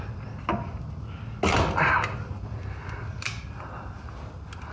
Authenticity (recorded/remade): recorded